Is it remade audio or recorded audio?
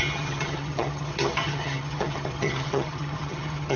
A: remade